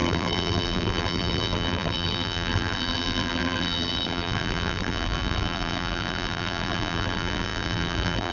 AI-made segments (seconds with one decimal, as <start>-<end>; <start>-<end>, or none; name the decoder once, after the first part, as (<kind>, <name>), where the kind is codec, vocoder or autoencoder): 0.0-8.3 (vocoder, BigVGAN v2)